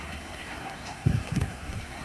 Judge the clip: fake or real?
fake